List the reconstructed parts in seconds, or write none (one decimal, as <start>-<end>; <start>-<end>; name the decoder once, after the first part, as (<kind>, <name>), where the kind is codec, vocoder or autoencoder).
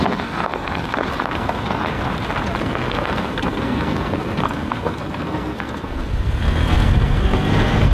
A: 0.0-2.0 (codec, SNAC); 2.6-7.9